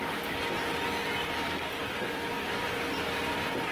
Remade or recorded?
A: recorded